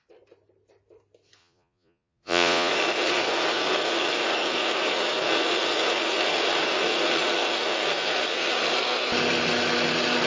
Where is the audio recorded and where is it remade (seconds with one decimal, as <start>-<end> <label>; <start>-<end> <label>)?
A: 0.0-1.4 recorded; 1.4-2.7 remade; 2.7-10.3 recorded